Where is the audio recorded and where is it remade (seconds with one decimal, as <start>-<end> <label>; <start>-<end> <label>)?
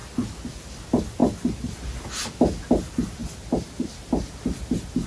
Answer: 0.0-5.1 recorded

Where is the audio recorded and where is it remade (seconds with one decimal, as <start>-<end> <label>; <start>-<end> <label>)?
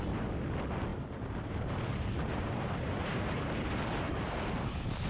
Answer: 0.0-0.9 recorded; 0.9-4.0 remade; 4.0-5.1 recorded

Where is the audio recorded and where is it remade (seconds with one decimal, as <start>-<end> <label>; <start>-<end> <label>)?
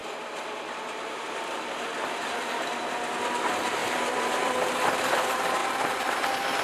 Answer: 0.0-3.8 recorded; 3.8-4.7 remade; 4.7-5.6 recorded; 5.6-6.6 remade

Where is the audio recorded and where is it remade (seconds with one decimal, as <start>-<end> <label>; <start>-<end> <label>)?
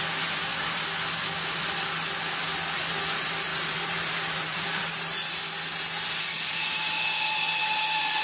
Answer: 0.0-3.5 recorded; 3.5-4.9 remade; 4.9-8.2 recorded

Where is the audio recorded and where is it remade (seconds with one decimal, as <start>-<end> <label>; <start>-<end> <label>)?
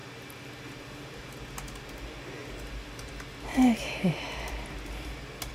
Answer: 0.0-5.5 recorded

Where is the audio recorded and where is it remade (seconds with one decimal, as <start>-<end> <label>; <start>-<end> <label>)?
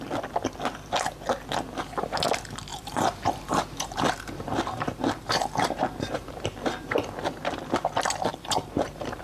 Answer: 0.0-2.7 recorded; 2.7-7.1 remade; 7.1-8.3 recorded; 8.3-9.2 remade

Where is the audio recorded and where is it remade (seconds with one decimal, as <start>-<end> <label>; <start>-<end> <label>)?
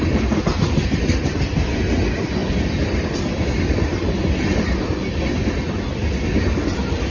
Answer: 0.0-7.1 recorded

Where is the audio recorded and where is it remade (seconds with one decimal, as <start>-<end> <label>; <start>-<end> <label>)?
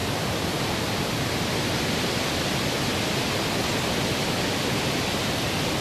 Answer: 0.0-5.8 recorded